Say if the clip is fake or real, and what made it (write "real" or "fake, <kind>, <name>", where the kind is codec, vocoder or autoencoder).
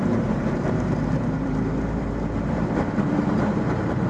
fake, vocoder, BigVGAN v2